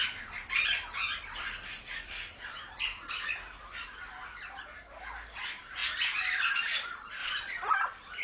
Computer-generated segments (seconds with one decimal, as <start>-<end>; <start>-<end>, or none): 1.1-3.3; 5.8-6.4; 7.2-7.7